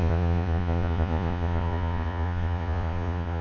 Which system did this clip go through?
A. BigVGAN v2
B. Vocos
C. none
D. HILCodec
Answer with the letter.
B